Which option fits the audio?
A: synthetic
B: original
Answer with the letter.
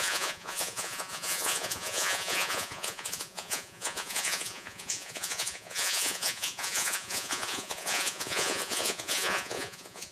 A